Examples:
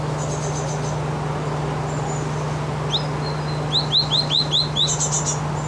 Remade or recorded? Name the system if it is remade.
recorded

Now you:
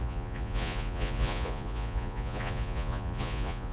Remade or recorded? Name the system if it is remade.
remade, vocoder, Vocos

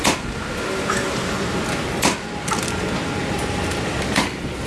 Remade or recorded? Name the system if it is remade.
recorded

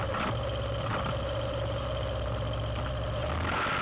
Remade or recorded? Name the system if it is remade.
recorded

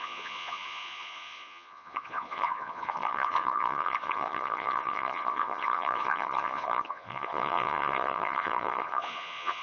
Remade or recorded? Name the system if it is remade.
remade, vocoder, Vocos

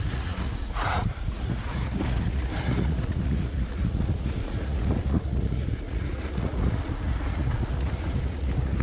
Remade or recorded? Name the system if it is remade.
remade, vocoder, Vocos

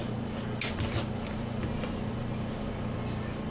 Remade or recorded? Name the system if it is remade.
recorded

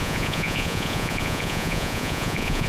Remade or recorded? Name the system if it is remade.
remade, vocoder, Vocos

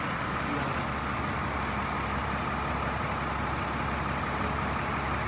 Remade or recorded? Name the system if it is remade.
recorded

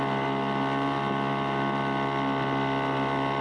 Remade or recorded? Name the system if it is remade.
recorded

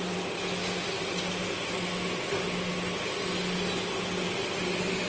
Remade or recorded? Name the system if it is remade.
recorded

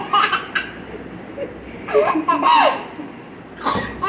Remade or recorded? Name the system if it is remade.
recorded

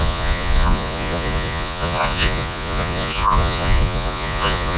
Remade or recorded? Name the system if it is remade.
remade, vocoder, Vocos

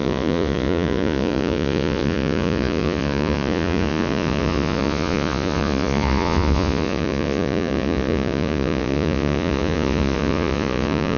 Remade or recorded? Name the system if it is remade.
remade, vocoder, Vocos